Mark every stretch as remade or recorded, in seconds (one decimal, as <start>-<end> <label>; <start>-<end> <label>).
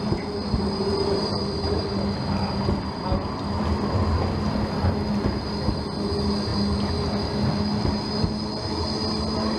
0.0-9.6 recorded